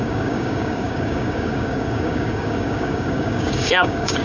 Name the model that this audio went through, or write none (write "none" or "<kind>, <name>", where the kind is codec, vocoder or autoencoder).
codec, DAC